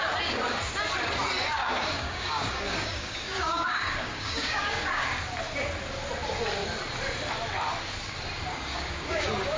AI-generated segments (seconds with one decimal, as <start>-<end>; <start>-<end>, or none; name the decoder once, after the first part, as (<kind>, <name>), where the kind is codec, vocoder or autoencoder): 1.6-5.1 (codec, DAC); 8.5-9.6